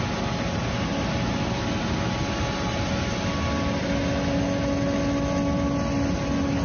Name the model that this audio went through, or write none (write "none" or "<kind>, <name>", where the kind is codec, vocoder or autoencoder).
none